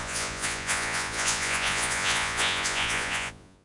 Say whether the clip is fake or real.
fake